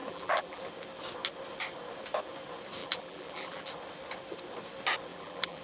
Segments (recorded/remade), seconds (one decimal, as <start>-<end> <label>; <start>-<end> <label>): 0.0-0.6 remade; 0.6-2.8 recorded; 2.8-3.7 remade; 3.7-5.1 recorded; 5.1-5.6 remade